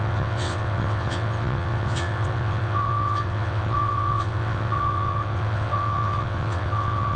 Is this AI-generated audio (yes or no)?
yes